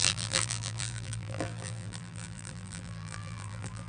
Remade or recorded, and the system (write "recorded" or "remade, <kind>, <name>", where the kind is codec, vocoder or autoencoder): remade, vocoder, BigVGAN v2